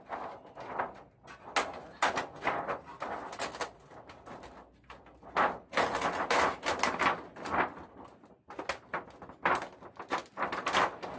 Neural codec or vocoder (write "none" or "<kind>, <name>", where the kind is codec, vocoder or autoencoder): none